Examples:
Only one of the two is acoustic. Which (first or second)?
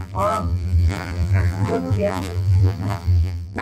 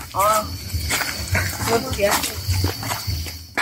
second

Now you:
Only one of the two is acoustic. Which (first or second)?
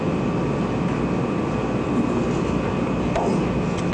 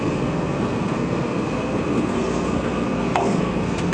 first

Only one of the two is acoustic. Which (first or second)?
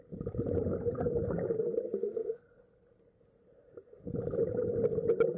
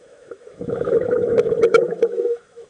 first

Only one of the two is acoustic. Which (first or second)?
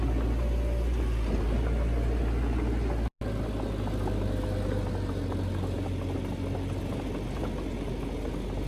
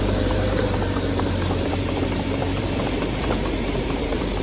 first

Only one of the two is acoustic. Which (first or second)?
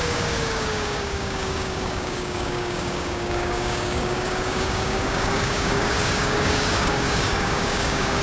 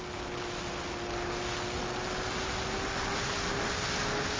second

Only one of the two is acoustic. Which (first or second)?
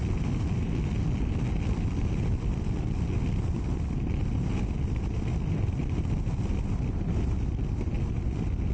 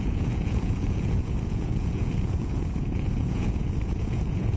first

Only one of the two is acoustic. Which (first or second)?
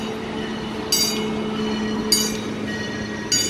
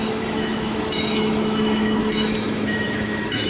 first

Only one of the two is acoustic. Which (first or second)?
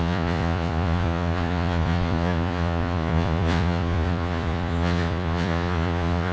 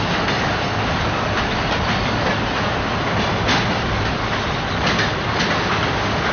second